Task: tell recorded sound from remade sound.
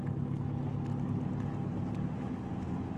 recorded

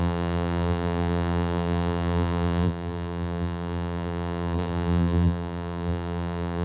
remade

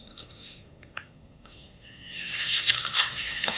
remade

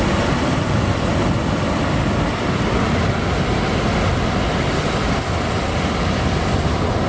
recorded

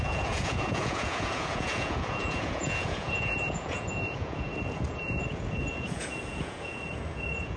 remade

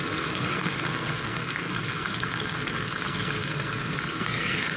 remade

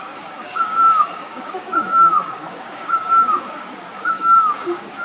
remade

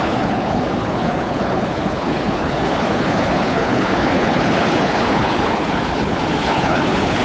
remade